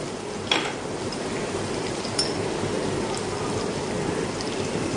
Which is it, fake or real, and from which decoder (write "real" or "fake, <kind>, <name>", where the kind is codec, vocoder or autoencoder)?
fake, vocoder, BigVGAN v2